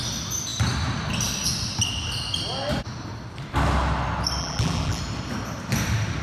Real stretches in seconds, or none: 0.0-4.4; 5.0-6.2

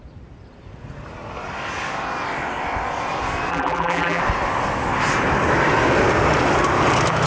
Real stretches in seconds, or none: 0.0-3.5; 4.2-7.3

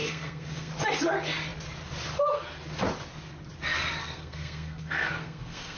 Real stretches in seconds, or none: 0.7-4.0

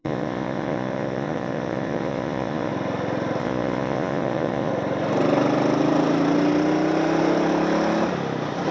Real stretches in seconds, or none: 2.7-3.4; 4.7-8.7

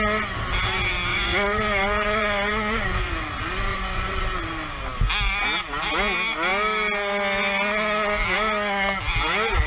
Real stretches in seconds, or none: 0.0-1.1; 3.1-3.7; 4.2-9.7

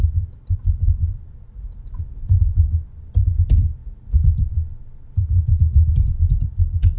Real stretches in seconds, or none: 0.0-7.0

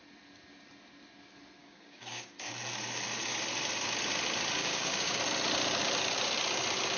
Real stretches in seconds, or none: 0.0-1.6; 2.5-4.6; 5.2-7.0

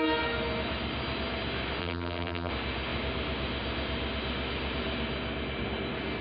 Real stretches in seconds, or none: 0.0-1.8; 2.5-6.2